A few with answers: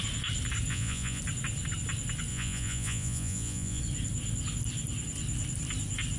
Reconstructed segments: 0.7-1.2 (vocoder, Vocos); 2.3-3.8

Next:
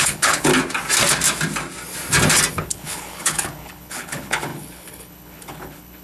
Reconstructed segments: 0.0-0.5 (codec, HILCodec); 2.5-6.0

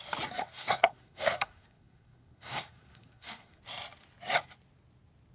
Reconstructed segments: 0.4-3.6 (codec, SNAC)

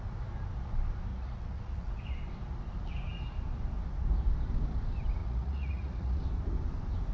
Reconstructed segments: 1.1-1.9 (vocoder, Vocos); 5.2-6.2

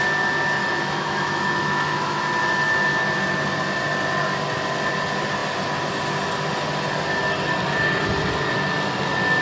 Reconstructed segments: 0.6-2.2 (autoencoder, DAC-VAE)